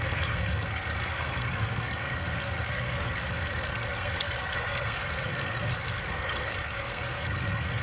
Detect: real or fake fake